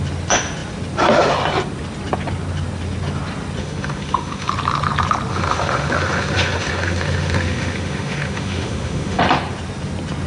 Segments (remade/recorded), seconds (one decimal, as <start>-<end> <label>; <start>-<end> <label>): 0.0-3.6 recorded; 3.6-4.5 remade; 4.5-5.3 recorded; 5.3-9.2 remade; 9.2-10.3 recorded